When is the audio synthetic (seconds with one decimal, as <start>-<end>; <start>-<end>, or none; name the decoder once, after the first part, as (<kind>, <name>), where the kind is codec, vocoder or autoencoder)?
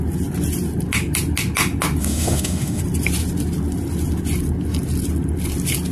2.0-2.8 (autoencoder, DAC-VAE)